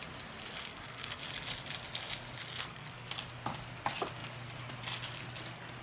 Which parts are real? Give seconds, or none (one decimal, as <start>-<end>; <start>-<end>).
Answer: 0.0-0.6; 1.2-2.4; 3.1-5.8